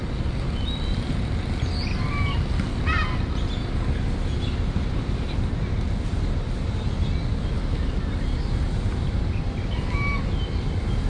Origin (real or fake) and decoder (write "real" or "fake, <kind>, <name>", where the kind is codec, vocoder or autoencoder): real